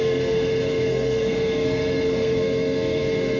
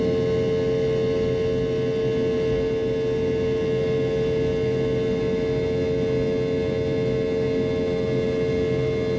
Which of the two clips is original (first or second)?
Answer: second